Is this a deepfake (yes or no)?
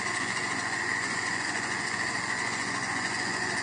yes